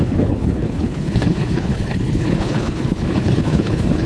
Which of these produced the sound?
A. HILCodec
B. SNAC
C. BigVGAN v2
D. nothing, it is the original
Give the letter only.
A